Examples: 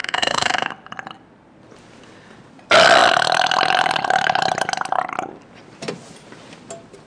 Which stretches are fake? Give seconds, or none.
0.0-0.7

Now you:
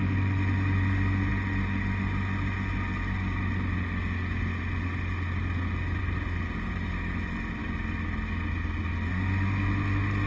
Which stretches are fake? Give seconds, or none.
none

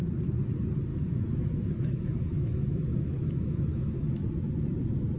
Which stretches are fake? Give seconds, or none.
0.9-4.0

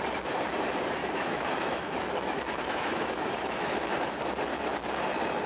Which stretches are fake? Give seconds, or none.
1.0-4.3

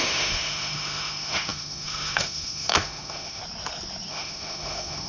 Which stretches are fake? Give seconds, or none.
0.0-3.4; 4.1-5.1

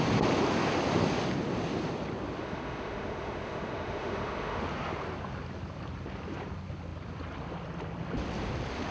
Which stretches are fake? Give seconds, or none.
2.4-4.6

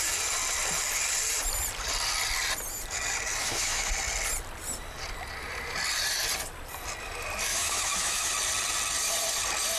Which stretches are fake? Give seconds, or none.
3.4-3.9; 7.5-8.3

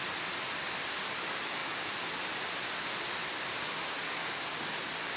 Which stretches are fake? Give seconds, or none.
none